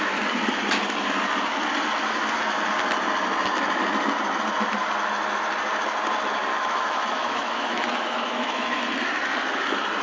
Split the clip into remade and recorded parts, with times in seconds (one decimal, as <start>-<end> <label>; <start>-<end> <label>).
0.0-6.5 recorded; 6.5-8.8 remade; 8.8-10.0 recorded